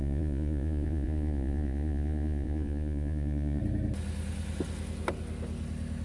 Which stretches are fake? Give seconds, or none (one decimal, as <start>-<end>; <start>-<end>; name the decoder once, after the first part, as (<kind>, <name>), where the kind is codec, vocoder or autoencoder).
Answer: 0.0-3.6 (vocoder, Vocos)